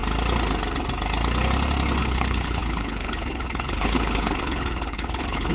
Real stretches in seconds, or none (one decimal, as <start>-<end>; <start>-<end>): 0.0-2.0